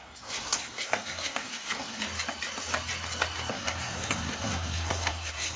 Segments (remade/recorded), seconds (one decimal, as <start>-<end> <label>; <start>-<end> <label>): 0.0-2.0 remade; 2.0-3.5 recorded; 3.5-5.6 remade